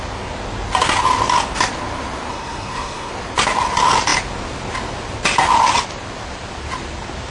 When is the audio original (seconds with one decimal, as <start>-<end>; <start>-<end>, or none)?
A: 0.0-2.3; 3.1-7.3